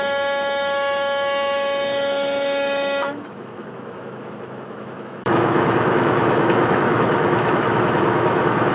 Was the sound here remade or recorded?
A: remade